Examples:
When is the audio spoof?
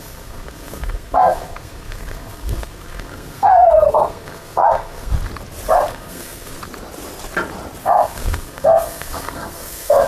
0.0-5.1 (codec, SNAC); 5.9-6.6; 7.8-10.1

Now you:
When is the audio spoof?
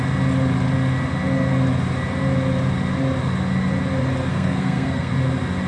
4.3-5.1 (codec, SNAC)